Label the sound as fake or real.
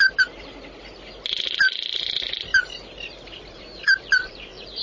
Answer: real